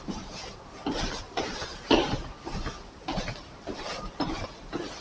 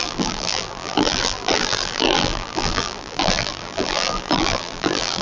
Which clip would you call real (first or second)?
first